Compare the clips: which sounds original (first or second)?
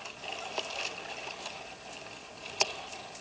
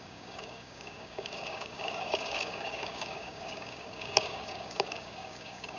first